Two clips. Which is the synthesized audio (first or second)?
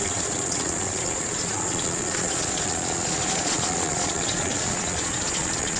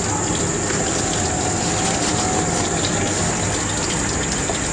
first